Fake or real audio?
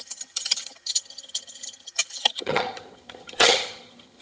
fake